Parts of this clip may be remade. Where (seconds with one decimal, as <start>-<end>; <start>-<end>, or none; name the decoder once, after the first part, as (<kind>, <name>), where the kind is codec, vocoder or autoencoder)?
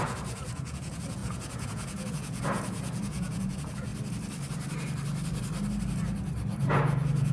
0.0-3.9 (vocoder, Vocos); 6.6-7.3